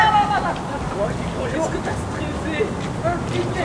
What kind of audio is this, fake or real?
real